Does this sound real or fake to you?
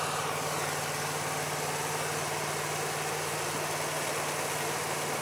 real